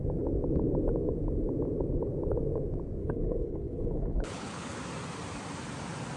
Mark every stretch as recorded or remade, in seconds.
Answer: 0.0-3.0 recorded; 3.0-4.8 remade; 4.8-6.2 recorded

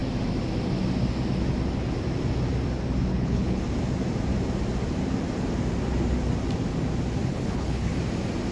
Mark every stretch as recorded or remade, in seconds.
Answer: 0.0-3.1 recorded; 3.1-3.6 remade; 3.6-7.3 recorded; 7.3-7.9 remade; 7.9-8.5 recorded

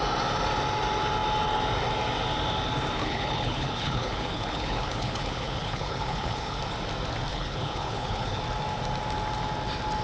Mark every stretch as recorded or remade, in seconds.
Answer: 0.0-3.0 recorded; 3.0-6.6 remade; 6.6-7.3 recorded; 7.3-8.4 remade; 8.4-10.0 recorded

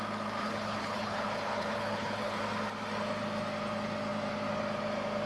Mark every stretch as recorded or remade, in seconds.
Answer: 0.0-0.4 recorded; 0.4-2.4 remade; 2.4-5.3 recorded

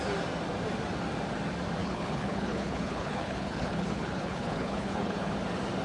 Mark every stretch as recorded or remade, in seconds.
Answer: 0.0-1.8 recorded; 1.8-5.3 remade; 5.3-5.8 recorded

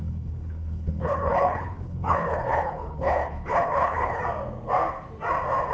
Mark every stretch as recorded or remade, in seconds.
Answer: 0.0-4.2 remade; 4.2-5.7 recorded

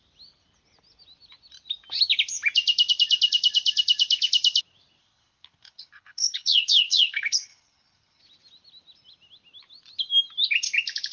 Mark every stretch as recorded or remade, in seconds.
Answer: 0.0-5.0 recorded; 5.0-8.2 remade; 8.2-11.1 recorded